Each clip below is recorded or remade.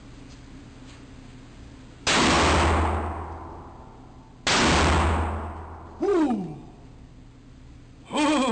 recorded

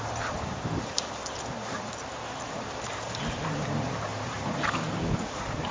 remade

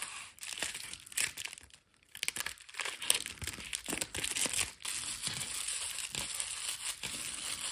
recorded